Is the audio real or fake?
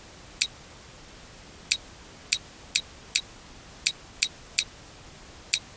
real